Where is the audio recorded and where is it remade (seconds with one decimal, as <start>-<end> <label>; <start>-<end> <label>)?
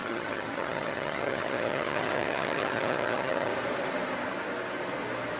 0.0-3.5 remade; 3.5-5.4 recorded